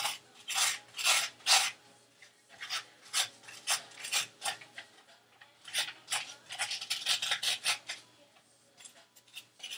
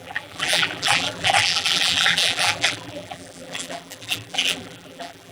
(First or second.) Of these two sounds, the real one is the first